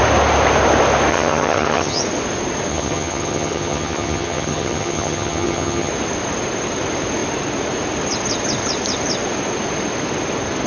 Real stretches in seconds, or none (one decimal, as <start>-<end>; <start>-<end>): 0.0-1.1; 2.0-2.7; 5.9-10.7

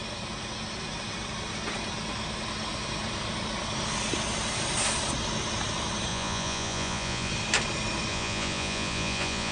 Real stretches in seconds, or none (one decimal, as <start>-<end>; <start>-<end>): 0.0-6.1; 7.3-8.1

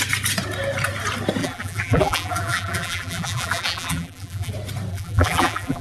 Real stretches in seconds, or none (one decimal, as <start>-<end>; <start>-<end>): 0.0-1.4; 4.5-4.9

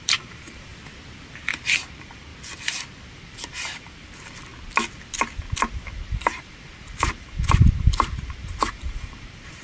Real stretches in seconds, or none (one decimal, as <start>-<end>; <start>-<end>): 0.7-1.9; 2.3-3.1; 4.5-5.7